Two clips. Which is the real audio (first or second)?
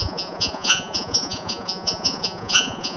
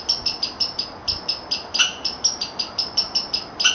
second